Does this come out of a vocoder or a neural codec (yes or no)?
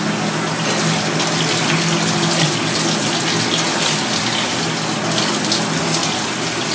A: no